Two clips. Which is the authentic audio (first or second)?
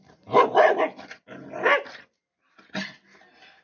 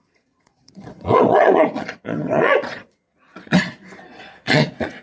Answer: first